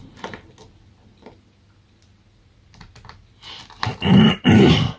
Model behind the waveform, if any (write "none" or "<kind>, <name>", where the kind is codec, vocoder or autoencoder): none